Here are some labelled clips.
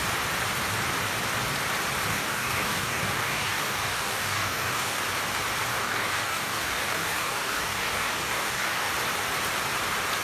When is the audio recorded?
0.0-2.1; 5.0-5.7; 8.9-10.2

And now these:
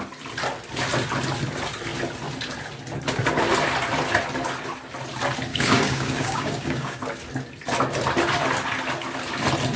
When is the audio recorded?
0.0-5.5; 7.0-9.8